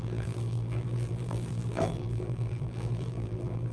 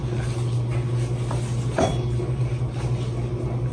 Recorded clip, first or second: second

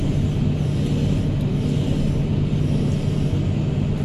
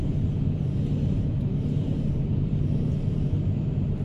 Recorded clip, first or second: first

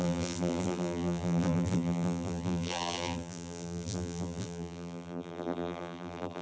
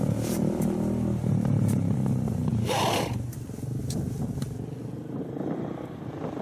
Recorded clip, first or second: second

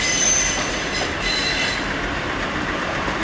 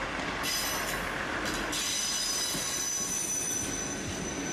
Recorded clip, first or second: second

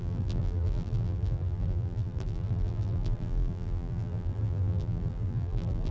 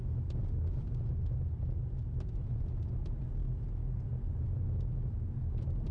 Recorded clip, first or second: second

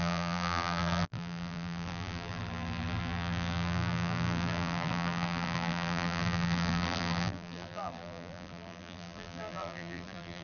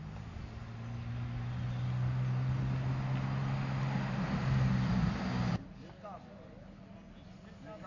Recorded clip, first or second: second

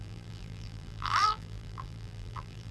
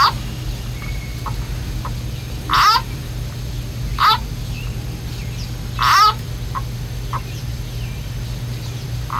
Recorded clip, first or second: second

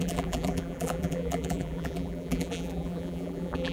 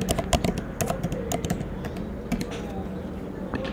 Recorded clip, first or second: second